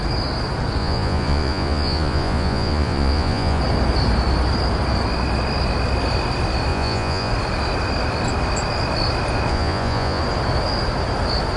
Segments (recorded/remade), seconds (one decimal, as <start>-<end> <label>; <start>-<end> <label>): 0.0-0.8 recorded; 0.8-3.6 remade; 3.6-6.7 recorded; 6.7-7.3 remade; 7.3-9.5 recorded; 9.5-10.2 remade; 10.2-11.6 recorded

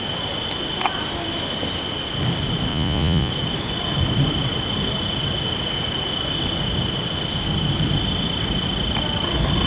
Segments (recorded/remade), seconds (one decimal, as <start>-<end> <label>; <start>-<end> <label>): 0.0-2.7 recorded; 2.7-3.3 remade; 3.3-9.7 recorded

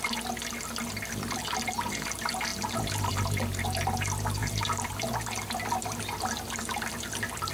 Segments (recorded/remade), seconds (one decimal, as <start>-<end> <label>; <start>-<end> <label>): 0.0-7.5 recorded

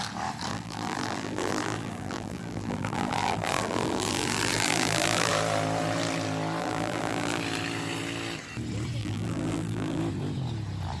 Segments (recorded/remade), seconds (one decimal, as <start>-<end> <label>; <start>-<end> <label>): 0.0-0.5 recorded; 0.5-5.3 remade; 5.3-6.6 recorded; 6.6-7.4 remade; 7.4-9.0 recorded; 9.0-10.0 remade; 10.0-11.0 recorded

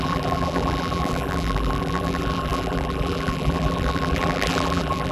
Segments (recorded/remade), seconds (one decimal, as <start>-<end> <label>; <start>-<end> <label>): 0.0-5.1 remade